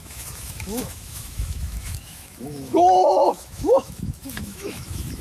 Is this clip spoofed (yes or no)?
yes